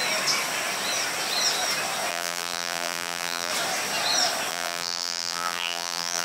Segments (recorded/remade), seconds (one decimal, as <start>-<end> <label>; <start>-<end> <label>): 0.0-2.1 recorded; 2.1-3.5 remade; 3.5-4.5 recorded; 4.5-6.2 remade